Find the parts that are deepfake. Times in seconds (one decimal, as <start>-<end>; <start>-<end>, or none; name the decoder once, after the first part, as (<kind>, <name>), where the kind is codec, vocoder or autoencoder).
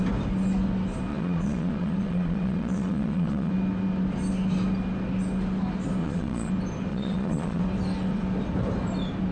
1.1-3.5 (vocoder, Vocos); 6.0-6.5; 6.9-7.6